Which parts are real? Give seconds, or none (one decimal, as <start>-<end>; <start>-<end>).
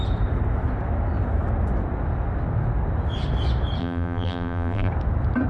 0.0-3.8; 4.9-5.5